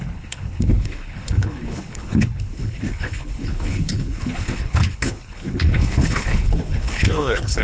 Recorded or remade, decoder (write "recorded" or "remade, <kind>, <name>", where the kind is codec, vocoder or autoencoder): remade, codec, HILCodec